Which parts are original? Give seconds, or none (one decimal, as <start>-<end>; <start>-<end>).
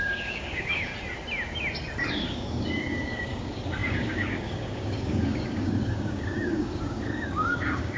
0.9-2.1